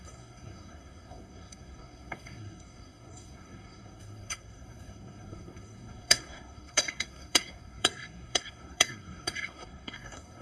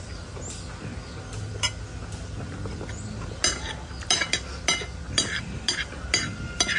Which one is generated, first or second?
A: first